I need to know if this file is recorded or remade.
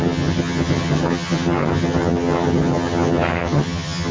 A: remade